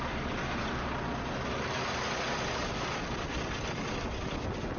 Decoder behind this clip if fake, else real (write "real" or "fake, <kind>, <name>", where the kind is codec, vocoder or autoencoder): real